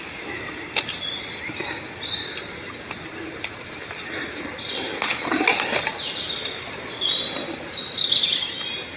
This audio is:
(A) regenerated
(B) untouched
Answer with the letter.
B